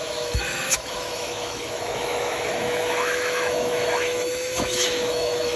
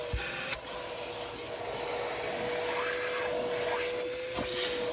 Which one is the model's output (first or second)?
first